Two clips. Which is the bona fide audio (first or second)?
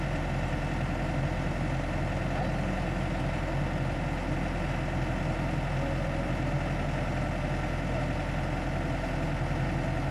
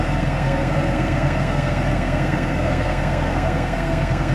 first